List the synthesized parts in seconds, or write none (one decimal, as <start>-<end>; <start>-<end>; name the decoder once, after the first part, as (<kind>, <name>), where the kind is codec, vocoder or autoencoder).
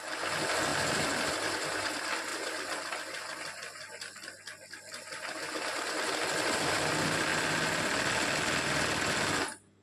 none